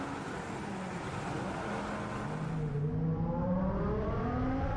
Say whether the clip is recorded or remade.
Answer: recorded